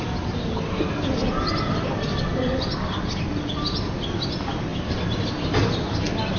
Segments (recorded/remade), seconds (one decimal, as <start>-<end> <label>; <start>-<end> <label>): 0.0-6.4 recorded